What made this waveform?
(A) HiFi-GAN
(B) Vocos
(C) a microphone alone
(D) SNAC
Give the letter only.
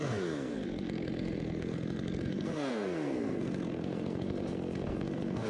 D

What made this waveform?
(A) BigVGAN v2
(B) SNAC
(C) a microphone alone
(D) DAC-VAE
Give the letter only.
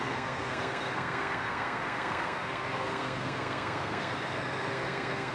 B